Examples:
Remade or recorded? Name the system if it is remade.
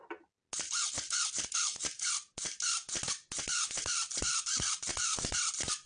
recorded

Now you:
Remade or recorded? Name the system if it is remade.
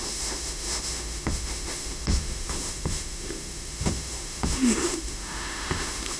remade, autoencoder, DAC-VAE